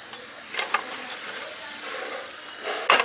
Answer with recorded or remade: recorded